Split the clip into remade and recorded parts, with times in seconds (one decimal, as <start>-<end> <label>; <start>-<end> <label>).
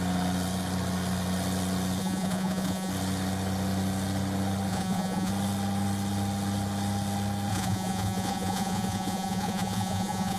0.0-2.0 recorded; 2.0-2.9 remade; 2.9-4.7 recorded; 4.7-5.3 remade; 5.3-7.5 recorded; 7.5-10.4 remade